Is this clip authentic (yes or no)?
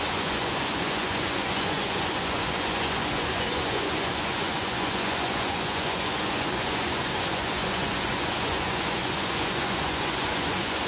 no